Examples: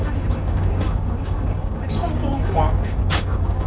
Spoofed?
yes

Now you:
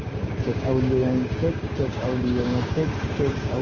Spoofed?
yes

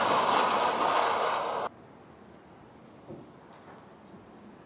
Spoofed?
no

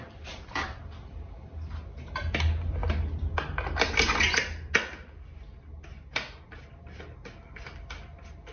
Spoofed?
no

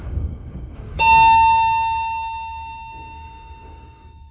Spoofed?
yes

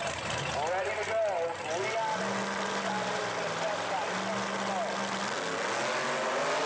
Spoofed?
no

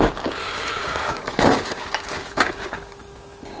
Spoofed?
yes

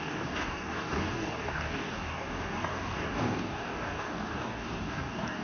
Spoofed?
yes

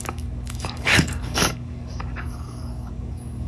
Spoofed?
yes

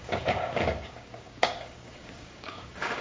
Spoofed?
yes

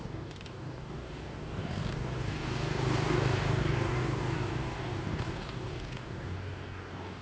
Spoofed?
yes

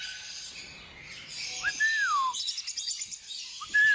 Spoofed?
no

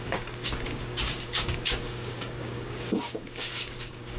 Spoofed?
yes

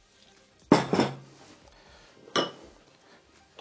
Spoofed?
no